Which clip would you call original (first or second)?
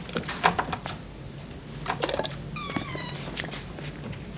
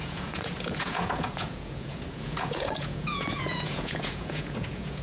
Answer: first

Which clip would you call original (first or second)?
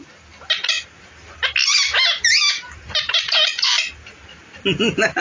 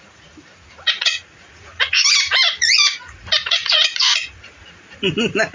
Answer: first